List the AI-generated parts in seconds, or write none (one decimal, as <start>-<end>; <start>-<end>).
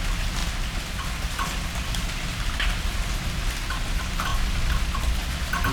none